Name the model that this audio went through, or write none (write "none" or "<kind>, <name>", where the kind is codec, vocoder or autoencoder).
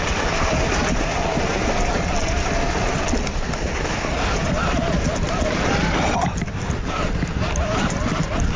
none